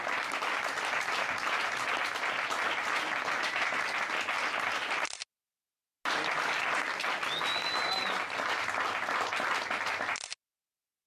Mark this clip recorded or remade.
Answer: recorded